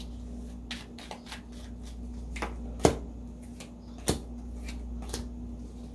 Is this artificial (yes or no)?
no